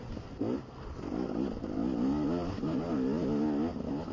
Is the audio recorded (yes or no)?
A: yes